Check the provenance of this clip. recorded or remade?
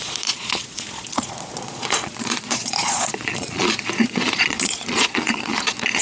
remade